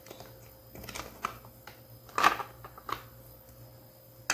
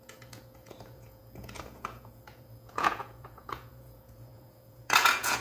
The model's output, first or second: second